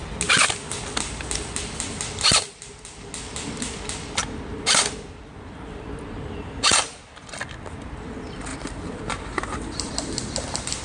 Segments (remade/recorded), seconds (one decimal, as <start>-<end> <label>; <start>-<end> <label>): 0.0-10.8 recorded